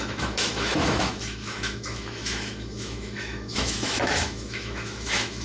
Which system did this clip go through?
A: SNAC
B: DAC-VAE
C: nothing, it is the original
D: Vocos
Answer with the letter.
B